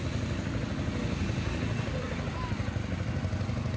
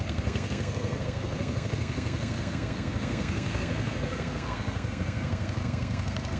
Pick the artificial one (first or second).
second